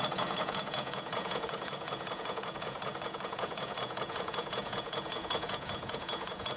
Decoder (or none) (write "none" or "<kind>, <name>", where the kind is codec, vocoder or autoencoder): vocoder, Vocos